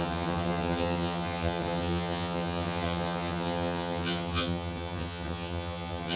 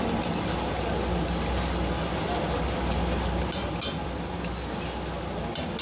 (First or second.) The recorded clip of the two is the second